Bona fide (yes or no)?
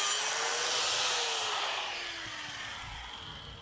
yes